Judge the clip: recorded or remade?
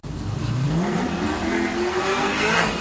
remade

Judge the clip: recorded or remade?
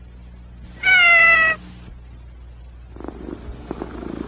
recorded